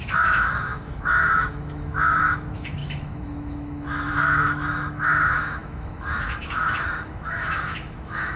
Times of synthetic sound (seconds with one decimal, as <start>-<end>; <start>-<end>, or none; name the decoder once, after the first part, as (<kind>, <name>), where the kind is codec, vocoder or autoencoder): 0.0-8.4 (autoencoder, DAC-VAE)